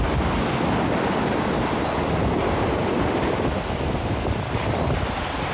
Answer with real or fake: real